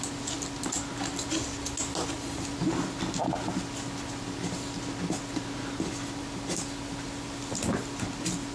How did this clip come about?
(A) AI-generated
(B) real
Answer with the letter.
B